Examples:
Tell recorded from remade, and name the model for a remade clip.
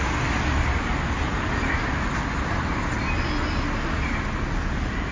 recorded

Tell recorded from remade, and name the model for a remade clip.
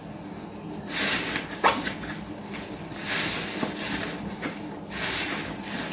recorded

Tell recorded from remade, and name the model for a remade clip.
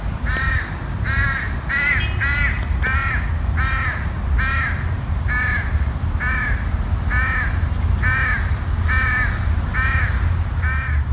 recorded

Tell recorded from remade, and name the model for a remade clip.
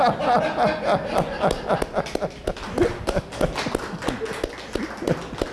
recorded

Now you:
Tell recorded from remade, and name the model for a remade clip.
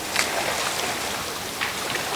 recorded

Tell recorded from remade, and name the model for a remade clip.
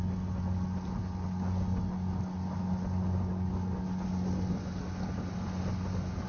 recorded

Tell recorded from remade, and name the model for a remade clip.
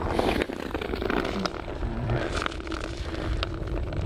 recorded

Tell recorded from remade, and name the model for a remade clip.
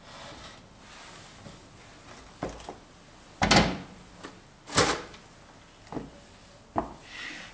recorded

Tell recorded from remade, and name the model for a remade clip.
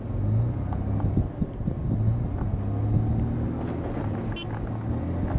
recorded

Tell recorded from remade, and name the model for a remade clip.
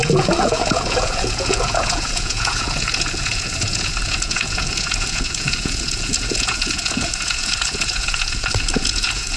remade, vocoder, Vocos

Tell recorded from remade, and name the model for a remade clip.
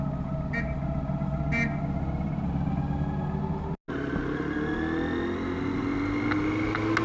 recorded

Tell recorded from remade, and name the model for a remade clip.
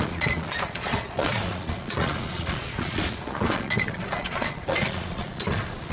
remade, vocoder, Vocos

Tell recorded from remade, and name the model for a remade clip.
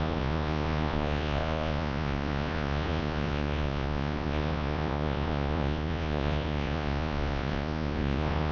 remade, vocoder, Vocos